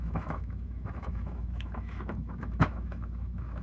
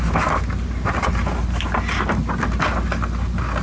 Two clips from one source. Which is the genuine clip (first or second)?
second